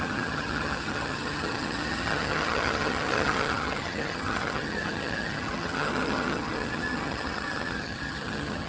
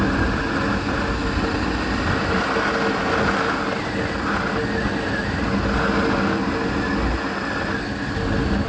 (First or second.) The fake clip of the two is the first